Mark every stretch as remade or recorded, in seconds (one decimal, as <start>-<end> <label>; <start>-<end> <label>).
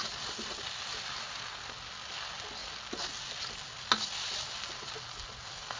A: 0.0-5.8 recorded